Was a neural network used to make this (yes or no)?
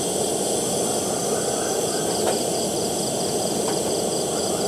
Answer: no